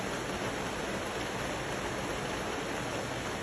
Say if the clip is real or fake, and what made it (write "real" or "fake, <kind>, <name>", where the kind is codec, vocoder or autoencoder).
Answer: real